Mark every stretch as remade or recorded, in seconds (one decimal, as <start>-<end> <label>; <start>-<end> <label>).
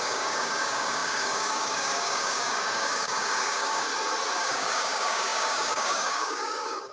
0.0-3.9 remade; 3.9-4.4 recorded; 4.4-6.9 remade